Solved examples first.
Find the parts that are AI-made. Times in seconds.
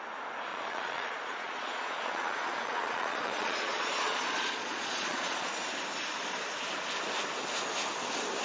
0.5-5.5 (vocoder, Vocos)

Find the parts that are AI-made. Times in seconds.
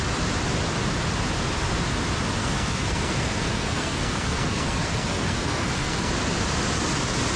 2.4-6.1 (codec, SNAC)